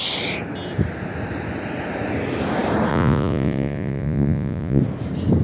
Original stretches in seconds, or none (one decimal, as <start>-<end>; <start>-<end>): 0.0-2.9; 4.8-5.4